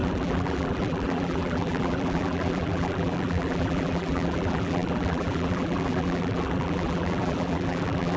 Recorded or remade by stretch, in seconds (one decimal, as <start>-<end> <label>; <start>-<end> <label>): 0.0-8.2 remade